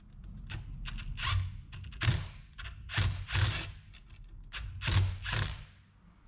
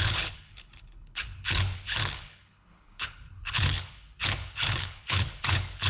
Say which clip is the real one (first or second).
first